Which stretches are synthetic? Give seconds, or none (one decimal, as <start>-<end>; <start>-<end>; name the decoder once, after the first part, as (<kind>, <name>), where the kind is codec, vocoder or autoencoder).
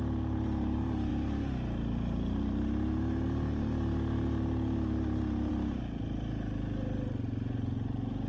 none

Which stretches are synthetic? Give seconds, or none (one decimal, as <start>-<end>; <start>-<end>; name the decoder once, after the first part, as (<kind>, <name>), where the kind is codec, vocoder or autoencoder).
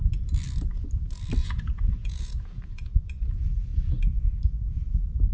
1.4-2.9 (vocoder, Vocos)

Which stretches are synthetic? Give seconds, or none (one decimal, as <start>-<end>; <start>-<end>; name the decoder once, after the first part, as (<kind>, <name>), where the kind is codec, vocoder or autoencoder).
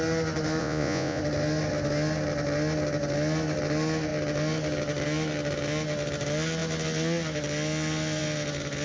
0.6-1.2 (vocoder, Vocos)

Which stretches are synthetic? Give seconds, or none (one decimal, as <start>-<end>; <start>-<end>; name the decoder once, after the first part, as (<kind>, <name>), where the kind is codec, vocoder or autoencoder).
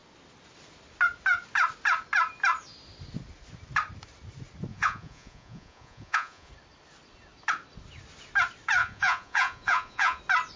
4.7-6.5 (vocoder, Vocos); 8.8-10.2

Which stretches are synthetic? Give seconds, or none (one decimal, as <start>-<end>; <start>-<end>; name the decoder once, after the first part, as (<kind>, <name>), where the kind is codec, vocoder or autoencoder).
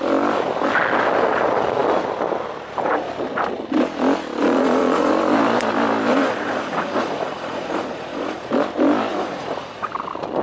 4.4-5.1 (vocoder, Vocos); 6.1-8.5; 9.1-9.9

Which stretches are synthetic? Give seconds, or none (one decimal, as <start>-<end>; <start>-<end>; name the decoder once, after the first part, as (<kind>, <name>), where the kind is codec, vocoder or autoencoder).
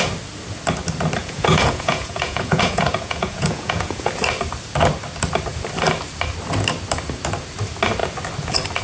1.2-4.1 (vocoder, Vocos)